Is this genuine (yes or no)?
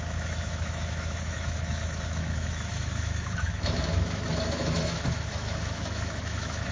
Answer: no